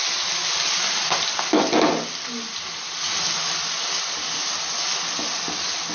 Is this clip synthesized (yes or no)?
no